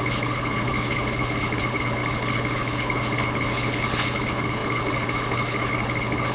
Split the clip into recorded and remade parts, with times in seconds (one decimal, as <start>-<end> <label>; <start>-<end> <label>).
0.0-6.3 remade